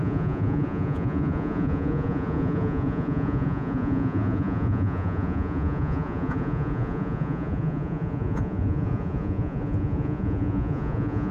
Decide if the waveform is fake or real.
fake